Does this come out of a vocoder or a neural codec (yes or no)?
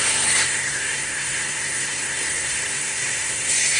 yes